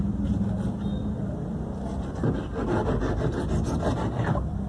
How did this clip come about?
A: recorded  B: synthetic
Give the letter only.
A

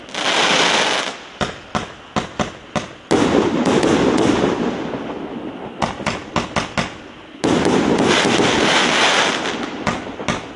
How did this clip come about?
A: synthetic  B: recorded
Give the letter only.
B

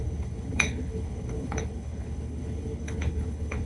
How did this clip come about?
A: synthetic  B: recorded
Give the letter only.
A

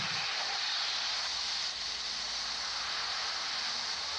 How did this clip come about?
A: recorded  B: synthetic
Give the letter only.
A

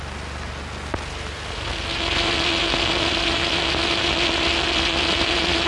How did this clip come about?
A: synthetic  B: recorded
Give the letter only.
B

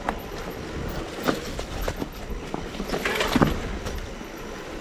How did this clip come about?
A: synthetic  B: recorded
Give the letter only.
B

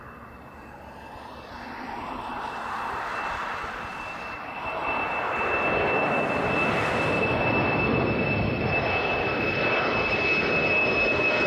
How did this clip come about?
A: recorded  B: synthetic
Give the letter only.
A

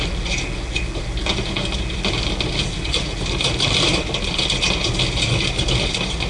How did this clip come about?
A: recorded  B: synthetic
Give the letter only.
A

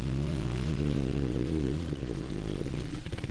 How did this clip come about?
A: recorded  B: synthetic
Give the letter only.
B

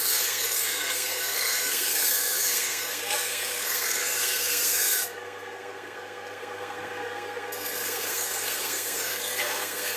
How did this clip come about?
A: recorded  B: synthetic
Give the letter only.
B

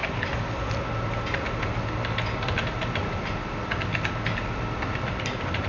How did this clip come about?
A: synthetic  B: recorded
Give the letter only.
B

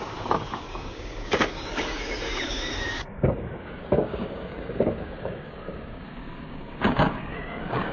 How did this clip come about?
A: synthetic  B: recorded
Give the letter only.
A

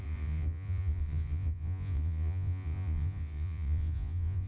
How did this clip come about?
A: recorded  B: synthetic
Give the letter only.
B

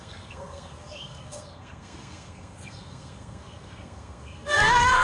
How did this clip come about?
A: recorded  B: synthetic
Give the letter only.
B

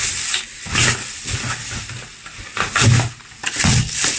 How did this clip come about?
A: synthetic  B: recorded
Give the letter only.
B